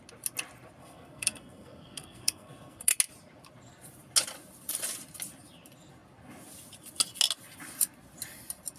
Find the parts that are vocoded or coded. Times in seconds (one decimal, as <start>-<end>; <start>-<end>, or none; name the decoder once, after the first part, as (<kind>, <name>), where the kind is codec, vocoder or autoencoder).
0.8-3.0 (codec, SNAC)